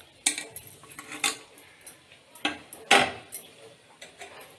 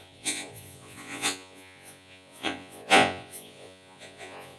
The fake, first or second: second